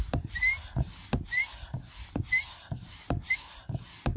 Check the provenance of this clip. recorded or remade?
recorded